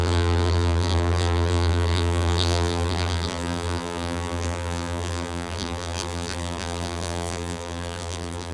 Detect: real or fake fake